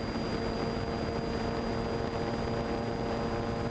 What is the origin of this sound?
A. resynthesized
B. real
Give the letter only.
B